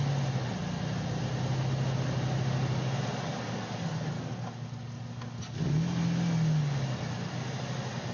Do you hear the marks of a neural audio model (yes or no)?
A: no